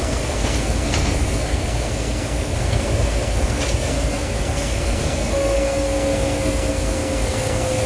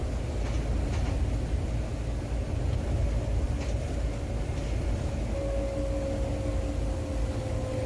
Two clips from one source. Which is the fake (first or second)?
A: first